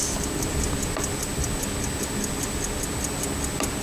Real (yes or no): yes